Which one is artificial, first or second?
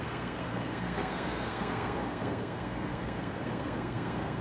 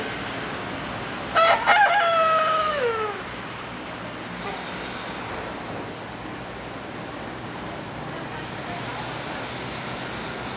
first